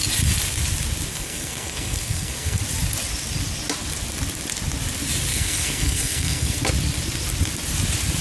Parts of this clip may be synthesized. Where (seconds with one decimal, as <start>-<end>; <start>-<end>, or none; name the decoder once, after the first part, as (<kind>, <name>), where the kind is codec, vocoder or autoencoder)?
1.1-2.6 (codec, SNAC); 5.3-6.6